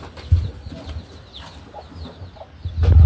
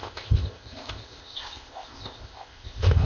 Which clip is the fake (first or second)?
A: second